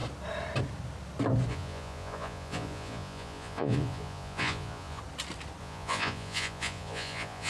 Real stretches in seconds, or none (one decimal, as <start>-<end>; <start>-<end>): 0.0-1.5; 5.0-5.6